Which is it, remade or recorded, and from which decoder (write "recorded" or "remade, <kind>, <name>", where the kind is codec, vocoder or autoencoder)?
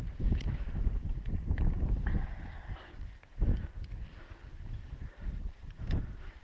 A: remade, vocoder, BigVGAN v2